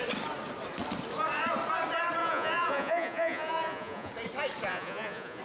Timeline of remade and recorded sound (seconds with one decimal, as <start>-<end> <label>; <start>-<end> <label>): 0.0-2.2 recorded; 2.2-4.1 remade; 4.1-4.7 recorded; 4.7-5.4 remade